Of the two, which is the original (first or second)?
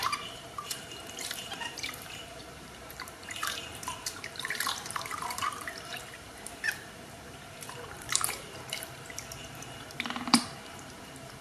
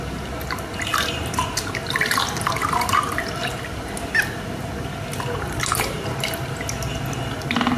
second